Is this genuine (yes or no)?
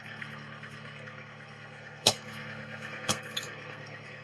no